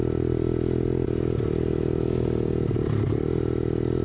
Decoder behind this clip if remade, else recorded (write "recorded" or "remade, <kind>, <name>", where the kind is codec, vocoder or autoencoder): recorded